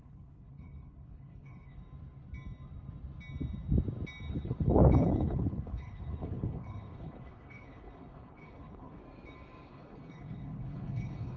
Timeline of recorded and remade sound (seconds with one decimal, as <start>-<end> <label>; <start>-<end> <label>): 0.0-1.8 remade; 1.8-4.3 recorded; 4.3-9.0 remade; 9.0-9.7 recorded; 9.7-11.4 remade